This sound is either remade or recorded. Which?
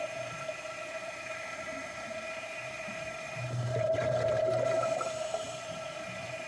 remade